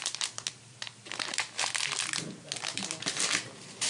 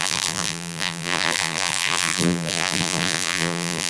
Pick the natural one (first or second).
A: first